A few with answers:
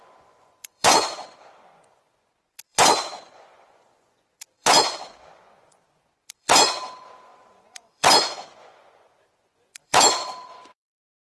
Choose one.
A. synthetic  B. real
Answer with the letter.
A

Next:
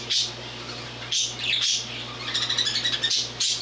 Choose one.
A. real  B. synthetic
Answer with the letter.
A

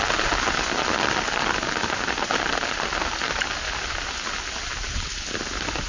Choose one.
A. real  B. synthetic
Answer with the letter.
A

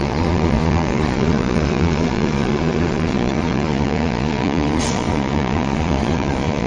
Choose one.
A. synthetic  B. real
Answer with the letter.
A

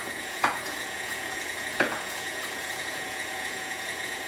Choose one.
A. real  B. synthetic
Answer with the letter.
B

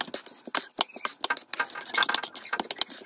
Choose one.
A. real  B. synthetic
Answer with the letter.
A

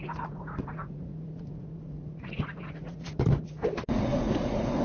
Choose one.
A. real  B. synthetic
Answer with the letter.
B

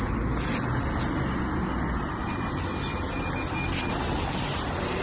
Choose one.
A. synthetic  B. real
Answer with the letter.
B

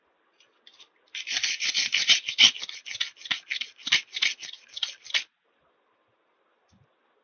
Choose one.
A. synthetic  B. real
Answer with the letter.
B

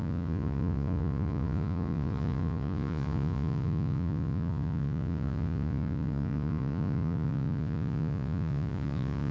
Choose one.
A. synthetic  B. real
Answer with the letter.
A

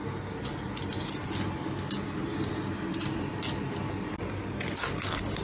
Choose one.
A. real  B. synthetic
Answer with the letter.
A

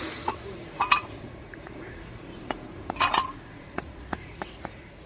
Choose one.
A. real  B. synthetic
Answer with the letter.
B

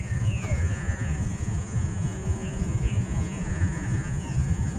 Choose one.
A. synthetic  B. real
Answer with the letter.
A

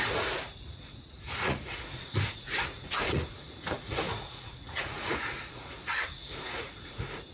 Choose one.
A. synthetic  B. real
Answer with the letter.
A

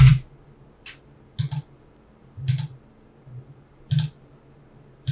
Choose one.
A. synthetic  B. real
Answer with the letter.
B